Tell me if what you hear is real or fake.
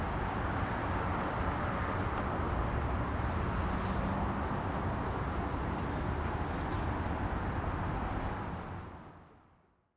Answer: real